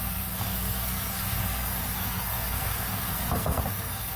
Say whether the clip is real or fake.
fake